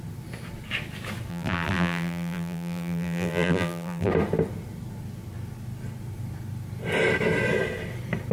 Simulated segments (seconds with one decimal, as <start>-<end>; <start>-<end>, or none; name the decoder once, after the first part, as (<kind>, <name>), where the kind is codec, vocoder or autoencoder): 1.3-4.1 (vocoder, BigVGAN v2)